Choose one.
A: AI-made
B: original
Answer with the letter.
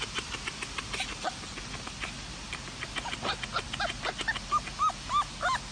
B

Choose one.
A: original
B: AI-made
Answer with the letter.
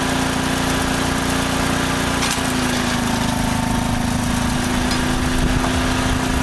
A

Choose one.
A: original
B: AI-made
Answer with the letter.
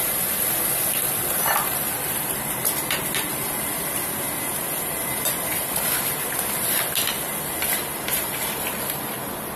B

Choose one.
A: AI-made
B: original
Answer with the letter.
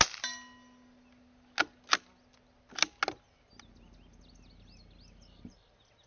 B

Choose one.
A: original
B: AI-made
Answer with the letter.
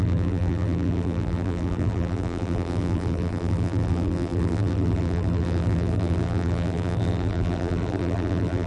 B